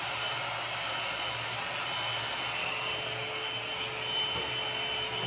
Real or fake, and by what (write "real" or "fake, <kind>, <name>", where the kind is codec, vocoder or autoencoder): real